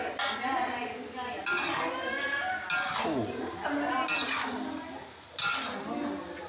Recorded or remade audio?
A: recorded